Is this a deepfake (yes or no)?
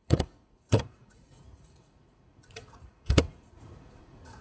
yes